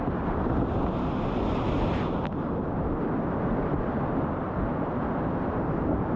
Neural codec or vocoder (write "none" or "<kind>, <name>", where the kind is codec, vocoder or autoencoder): none